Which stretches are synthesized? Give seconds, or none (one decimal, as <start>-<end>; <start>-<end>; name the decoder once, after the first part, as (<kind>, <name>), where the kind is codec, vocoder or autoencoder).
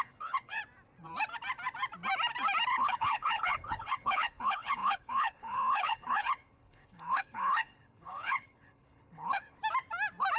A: 0.0-0.6 (codec, HILCodec); 2.7-9.6